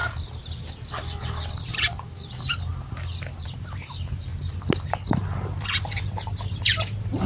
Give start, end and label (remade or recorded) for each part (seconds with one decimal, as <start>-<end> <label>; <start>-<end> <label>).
0.0-1.2 recorded; 1.2-2.7 remade; 2.7-3.4 recorded; 3.4-4.3 remade; 4.3-6.6 recorded; 6.6-7.3 remade